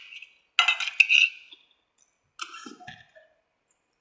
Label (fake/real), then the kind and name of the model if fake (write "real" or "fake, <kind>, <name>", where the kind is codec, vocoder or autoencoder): real